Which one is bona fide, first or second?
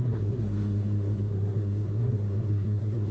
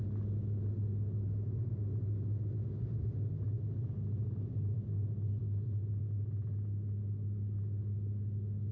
second